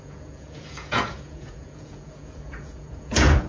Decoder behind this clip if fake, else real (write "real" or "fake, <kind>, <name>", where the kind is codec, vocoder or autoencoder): fake, vocoder, Vocos